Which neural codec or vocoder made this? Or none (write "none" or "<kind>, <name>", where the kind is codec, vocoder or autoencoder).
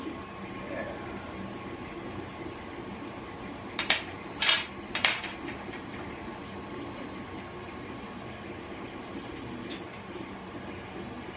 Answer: vocoder, BigVGAN v2